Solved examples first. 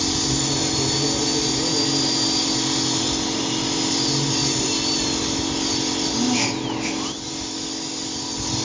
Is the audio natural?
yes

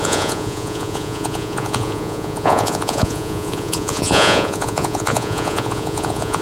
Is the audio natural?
no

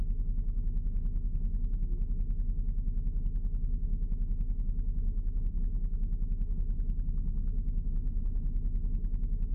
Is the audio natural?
no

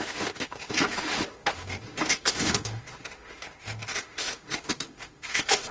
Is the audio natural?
no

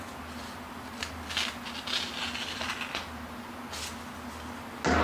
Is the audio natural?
yes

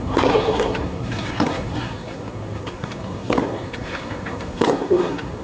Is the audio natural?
no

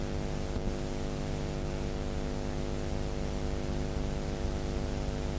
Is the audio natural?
yes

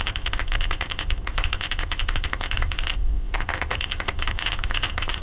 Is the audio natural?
no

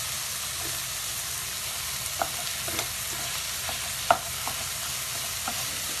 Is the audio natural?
yes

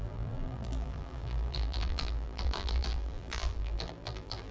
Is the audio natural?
no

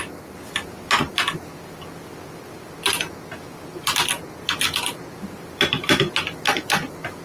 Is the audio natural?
yes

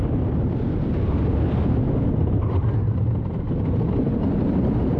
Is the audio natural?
yes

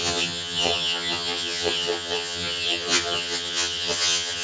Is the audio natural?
no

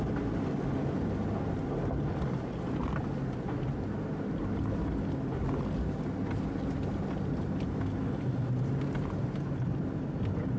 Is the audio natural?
yes